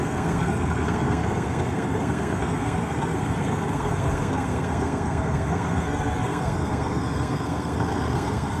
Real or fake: fake